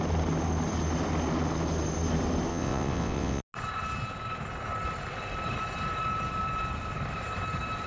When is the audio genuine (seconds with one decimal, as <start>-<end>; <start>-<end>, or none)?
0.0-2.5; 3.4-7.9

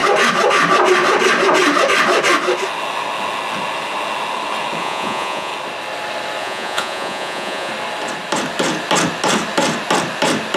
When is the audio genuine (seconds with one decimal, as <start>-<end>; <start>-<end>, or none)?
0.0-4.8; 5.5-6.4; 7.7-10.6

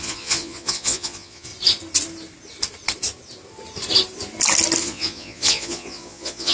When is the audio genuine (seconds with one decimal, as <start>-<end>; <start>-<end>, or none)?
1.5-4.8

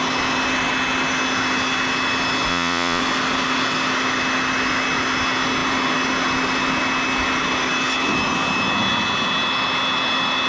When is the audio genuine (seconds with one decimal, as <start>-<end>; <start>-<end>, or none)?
0.0-2.5; 3.0-10.5

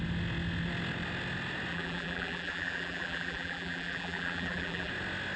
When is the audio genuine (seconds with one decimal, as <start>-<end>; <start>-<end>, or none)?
0.0-1.7; 4.9-5.4

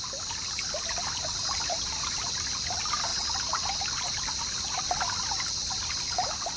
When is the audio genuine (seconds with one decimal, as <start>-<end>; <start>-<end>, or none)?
0.0-6.6